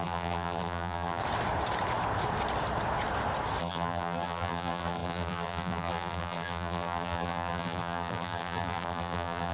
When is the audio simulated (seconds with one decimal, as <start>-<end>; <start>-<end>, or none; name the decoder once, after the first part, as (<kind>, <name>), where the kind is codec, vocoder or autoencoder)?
0.0-1.2 (vocoder, BigVGAN v2); 3.6-9.5